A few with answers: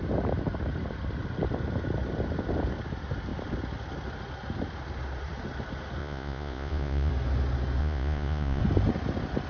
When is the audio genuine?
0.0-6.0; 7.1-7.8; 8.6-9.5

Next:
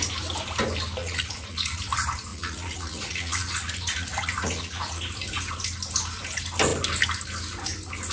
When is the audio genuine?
0.0-1.0; 1.8-2.3; 5.0-8.1

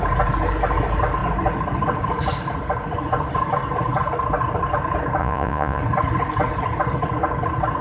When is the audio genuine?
0.0-5.2; 5.8-7.8

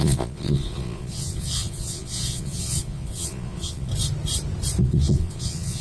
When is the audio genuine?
3.9-4.8

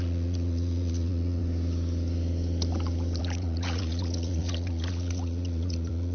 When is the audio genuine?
1.4-3.2